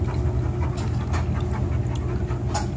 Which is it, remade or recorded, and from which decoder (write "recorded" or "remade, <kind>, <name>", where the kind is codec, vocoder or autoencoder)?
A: recorded